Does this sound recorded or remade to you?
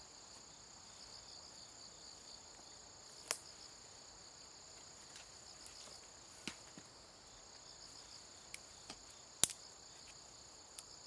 recorded